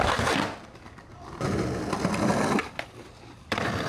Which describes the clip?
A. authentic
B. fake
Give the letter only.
B